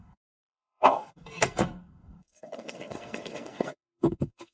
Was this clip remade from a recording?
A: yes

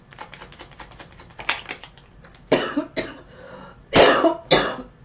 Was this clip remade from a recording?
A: no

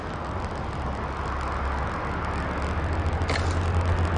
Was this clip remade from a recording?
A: no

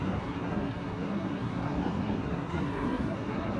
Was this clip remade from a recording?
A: yes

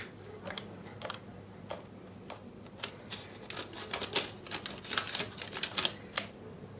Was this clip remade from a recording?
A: no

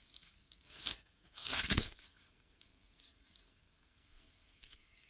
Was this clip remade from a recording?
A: yes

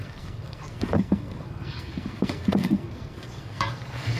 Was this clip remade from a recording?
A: yes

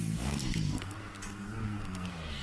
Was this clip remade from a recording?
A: yes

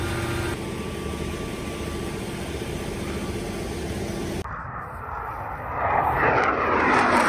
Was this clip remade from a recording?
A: no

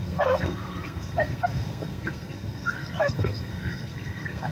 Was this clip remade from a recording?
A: yes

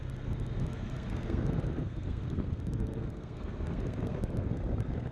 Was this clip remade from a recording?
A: yes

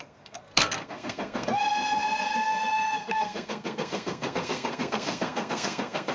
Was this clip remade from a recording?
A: yes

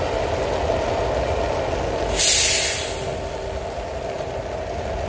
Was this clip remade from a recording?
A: no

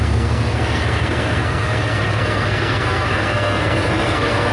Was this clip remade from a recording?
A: yes